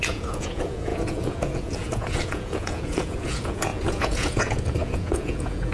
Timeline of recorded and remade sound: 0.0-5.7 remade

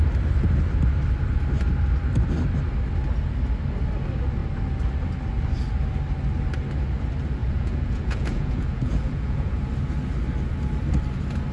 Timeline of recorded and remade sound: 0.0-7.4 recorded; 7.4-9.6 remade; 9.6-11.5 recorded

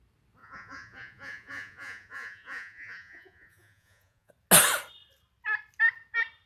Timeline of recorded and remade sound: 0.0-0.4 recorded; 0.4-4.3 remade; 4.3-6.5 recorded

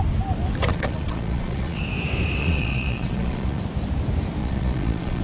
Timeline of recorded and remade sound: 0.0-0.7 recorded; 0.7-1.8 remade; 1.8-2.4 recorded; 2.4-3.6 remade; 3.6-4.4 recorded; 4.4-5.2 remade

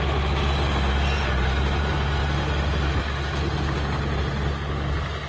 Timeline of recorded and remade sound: 0.0-5.3 recorded

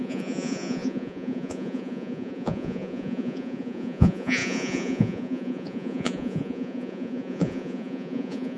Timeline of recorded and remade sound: 0.0-8.6 remade